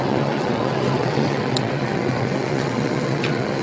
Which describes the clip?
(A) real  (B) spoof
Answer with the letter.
B